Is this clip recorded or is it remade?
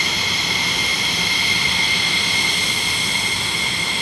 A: recorded